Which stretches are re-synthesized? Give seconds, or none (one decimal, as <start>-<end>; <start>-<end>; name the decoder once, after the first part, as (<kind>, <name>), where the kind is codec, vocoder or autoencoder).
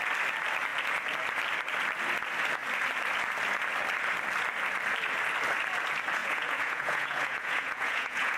6.2-8.4 (vocoder, Vocos)